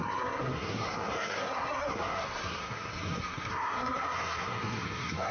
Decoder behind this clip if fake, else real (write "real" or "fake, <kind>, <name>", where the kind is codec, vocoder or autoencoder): fake, codec, SNAC